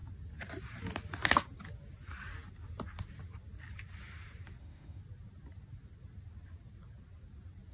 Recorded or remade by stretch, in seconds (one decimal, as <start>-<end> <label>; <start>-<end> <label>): 0.0-4.6 recorded; 4.6-5.0 remade; 5.0-7.7 recorded